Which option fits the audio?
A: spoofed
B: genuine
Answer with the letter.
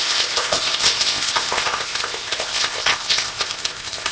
A